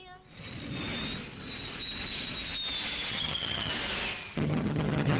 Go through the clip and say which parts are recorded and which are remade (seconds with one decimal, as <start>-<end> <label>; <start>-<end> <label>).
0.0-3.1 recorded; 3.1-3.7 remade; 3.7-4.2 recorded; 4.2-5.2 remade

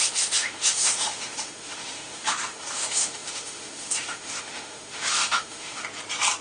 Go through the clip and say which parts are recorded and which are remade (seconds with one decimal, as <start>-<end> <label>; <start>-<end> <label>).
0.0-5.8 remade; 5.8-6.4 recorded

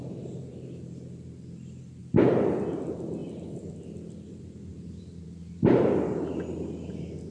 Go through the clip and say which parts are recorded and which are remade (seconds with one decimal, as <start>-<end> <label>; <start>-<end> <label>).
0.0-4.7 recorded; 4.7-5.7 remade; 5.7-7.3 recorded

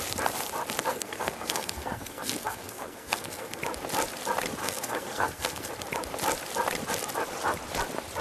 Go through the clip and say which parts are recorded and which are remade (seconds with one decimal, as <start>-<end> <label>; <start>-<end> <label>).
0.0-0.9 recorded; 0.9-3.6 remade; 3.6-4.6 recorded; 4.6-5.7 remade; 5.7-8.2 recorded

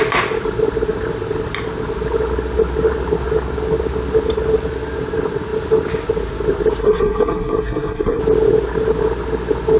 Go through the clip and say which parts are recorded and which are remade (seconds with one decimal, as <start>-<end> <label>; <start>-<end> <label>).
0.0-6.8 recorded; 6.8-8.2 remade; 8.2-9.8 recorded

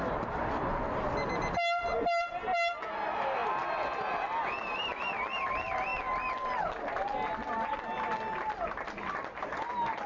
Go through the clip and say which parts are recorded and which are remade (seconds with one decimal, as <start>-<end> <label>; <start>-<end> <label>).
0.0-10.1 recorded

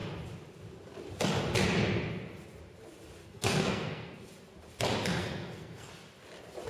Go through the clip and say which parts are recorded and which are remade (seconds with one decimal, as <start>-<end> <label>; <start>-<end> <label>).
0.0-3.2 recorded; 3.2-4.3 remade; 4.3-5.2 recorded; 5.2-5.9 remade; 5.9-6.7 recorded